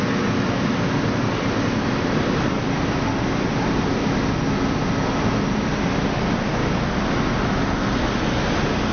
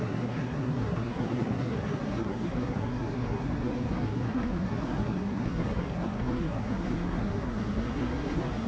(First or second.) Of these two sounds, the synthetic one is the second